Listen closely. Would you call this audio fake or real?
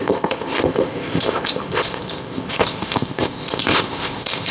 fake